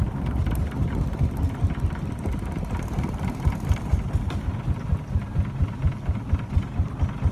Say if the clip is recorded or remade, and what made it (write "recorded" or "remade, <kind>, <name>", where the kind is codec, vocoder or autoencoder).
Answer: recorded